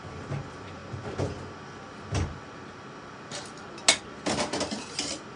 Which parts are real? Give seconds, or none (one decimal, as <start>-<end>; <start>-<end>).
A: 0.0-5.4